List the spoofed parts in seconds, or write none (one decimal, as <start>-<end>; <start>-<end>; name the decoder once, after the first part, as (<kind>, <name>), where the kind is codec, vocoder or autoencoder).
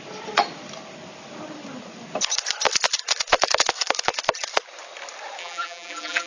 5.4-6.3 (vocoder, BigVGAN v2)